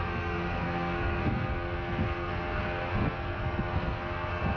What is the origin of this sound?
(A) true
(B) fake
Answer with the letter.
B